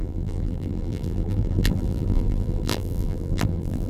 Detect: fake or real fake